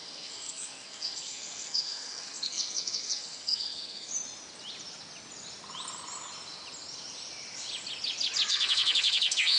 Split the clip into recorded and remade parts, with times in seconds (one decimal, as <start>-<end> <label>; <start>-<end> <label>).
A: 0.0-4.1 remade; 4.1-8.5 recorded; 8.5-9.6 remade